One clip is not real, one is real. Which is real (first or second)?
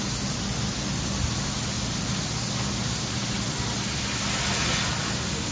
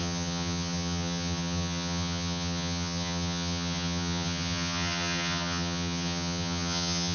first